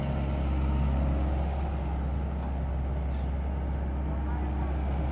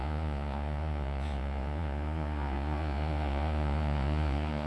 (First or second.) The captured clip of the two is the first